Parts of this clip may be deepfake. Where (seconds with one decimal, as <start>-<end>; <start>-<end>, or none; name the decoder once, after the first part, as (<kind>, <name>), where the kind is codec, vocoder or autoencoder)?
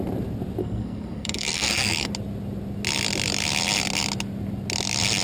0.6-2.1 (codec, SNAC)